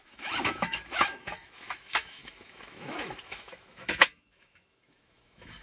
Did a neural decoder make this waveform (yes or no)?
yes